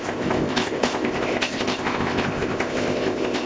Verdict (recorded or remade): remade